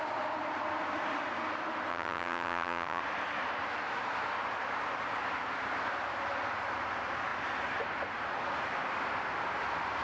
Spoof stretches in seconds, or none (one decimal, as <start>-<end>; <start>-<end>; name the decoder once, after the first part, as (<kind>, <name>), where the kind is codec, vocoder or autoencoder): 1.9-3.0 (vocoder, HiFi-GAN)